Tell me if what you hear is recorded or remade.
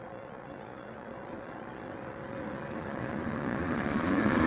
remade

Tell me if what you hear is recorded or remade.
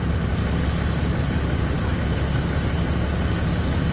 recorded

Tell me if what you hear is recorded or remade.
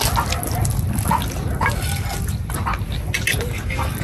recorded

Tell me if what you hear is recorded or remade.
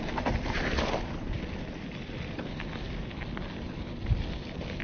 recorded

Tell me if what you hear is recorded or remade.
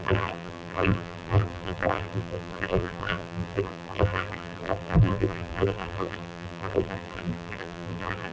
remade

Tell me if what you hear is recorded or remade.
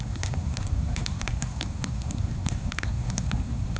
remade